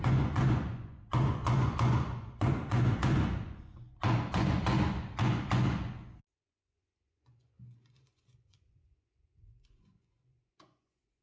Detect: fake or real fake